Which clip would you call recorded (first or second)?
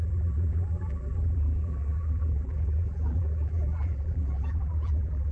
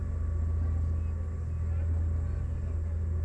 second